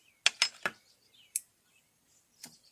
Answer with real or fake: real